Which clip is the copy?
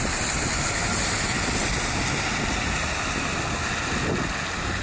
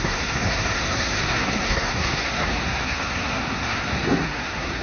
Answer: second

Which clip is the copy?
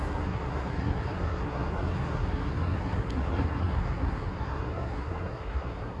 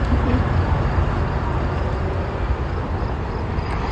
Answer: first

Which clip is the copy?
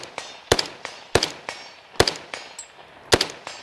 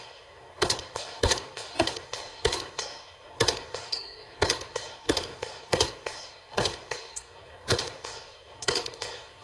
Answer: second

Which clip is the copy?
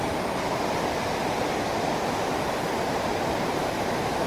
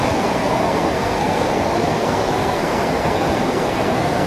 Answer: second